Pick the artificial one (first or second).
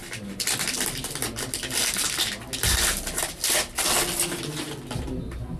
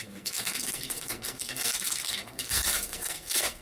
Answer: second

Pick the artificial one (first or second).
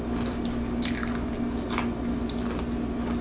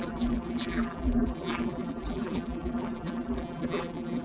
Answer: second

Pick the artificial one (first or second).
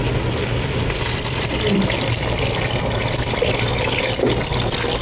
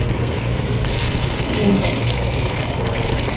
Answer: second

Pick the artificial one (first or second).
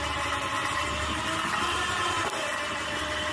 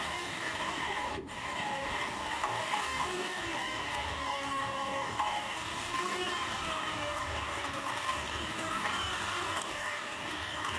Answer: second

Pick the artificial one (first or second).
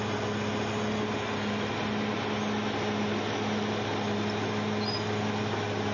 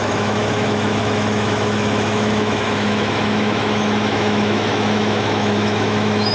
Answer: second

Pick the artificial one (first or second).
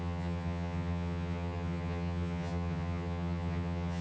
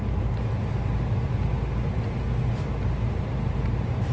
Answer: first